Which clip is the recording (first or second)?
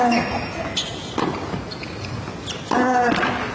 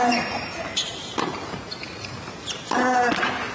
first